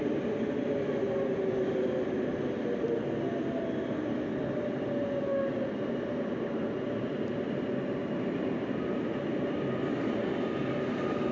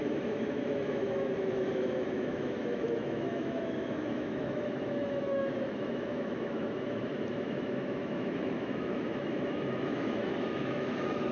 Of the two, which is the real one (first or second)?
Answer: first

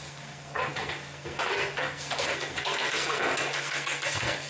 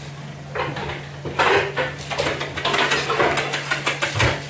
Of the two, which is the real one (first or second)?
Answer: second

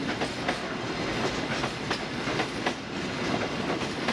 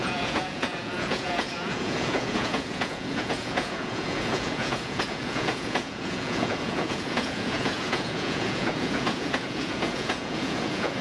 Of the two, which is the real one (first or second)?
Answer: first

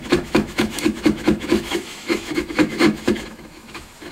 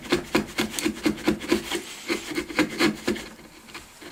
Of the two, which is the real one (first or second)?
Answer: second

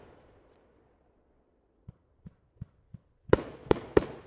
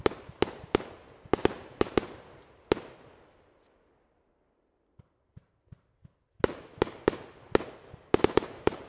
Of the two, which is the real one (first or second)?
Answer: second